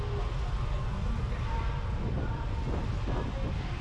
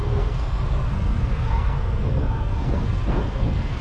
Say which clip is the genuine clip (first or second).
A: first